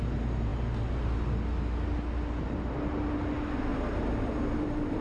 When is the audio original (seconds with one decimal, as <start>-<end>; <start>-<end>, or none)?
0.0-3.7